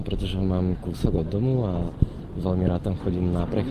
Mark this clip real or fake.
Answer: real